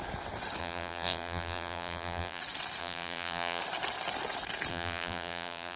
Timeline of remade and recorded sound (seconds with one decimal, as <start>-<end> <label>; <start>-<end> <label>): 0.0-0.6 recorded; 0.6-2.4 remade; 2.4-2.8 recorded; 2.8-3.6 remade; 3.6-4.7 recorded; 4.7-5.8 remade